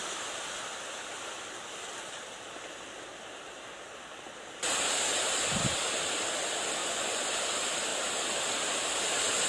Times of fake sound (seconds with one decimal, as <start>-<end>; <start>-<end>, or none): 6.8-7.4